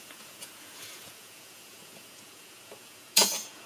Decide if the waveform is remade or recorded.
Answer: remade